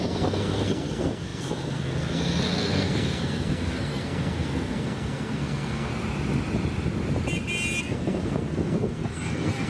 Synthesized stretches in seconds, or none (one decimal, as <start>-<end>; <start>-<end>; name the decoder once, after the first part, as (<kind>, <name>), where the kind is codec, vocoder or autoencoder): 0.0-5.9 (codec, SNAC); 7.8-9.7